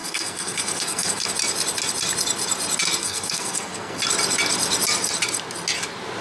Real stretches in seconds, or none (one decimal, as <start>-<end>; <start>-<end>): 1.3-3.0; 4.0-6.2